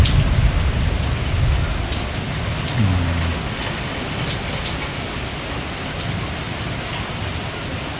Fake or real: real